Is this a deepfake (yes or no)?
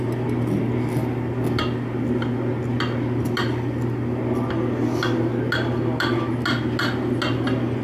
no